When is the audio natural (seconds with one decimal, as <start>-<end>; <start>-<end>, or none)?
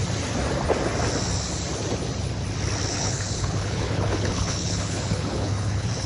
0.0-2.9